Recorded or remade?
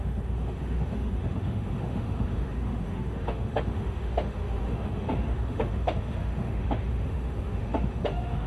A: remade